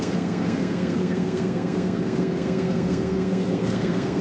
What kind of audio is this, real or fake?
fake